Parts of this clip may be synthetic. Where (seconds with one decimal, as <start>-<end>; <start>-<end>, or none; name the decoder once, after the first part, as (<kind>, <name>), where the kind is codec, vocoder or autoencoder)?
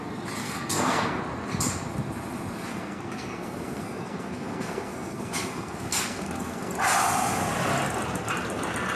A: 0.4-1.2 (codec, SNAC); 2.7-6.7